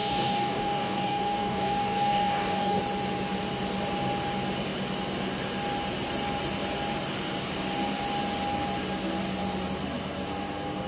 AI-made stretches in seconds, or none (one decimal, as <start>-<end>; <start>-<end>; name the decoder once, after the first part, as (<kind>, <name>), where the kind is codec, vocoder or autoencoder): 0.0-2.8 (codec, DAC)